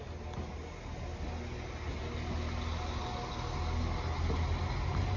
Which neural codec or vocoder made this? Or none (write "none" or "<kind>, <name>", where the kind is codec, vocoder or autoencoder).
none